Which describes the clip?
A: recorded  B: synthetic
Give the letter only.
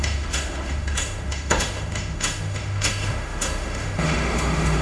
B